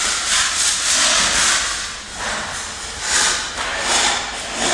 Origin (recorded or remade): recorded